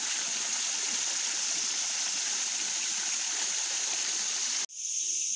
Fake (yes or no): no